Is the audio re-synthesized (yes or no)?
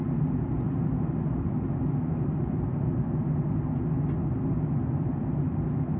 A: no